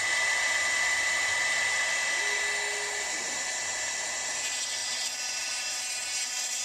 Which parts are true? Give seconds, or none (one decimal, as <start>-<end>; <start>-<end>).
0.0-6.6